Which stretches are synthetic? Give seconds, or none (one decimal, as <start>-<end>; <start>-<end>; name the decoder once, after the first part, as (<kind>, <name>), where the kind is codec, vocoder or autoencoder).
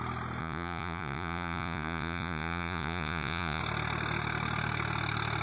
0.4-3.6 (vocoder, Vocos)